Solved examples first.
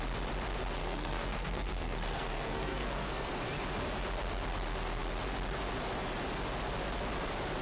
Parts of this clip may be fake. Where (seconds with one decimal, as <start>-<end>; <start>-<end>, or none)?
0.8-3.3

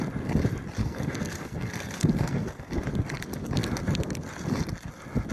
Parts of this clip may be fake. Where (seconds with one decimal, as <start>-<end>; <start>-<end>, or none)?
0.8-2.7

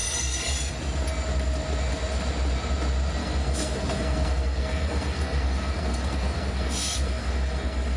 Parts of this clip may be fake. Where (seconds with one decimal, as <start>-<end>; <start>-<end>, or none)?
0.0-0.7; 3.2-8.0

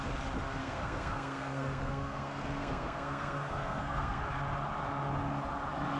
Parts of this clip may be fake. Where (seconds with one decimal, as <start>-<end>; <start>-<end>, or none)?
0.6-4.2

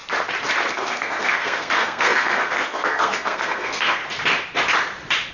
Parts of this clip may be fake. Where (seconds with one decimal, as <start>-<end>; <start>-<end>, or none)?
0.7-4.0

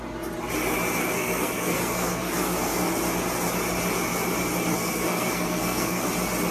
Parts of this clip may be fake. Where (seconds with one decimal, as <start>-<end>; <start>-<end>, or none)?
1.0-2.9; 4.7-6.1